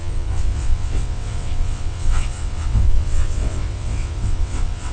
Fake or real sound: fake